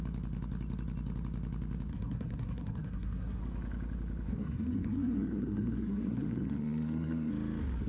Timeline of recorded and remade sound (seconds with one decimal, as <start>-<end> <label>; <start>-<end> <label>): 0.0-1.9 recorded; 1.9-3.4 remade; 3.4-4.3 recorded; 4.3-7.3 remade; 7.3-7.9 recorded